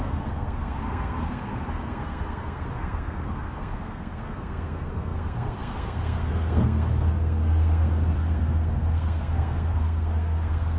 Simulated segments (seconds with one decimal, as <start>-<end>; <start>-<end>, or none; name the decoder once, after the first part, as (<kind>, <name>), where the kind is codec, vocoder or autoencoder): 0.0-10.8 (codec, SNAC)